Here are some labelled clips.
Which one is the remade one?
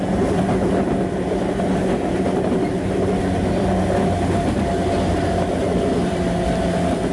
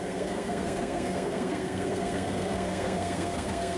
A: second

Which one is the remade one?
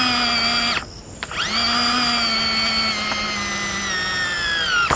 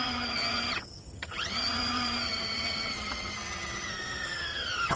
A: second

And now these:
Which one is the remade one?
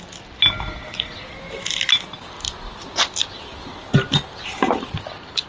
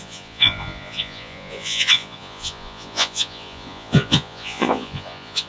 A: second